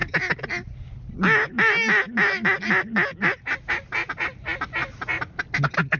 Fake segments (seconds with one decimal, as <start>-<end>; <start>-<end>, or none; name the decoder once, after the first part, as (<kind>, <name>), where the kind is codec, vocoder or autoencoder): none